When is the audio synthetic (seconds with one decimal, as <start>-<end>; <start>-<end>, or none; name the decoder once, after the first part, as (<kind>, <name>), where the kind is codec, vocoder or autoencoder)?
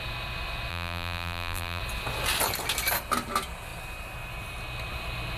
0.7-1.8 (vocoder, BigVGAN v2)